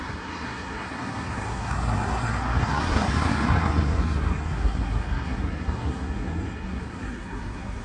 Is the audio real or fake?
fake